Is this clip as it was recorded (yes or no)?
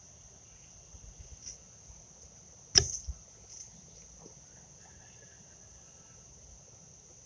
yes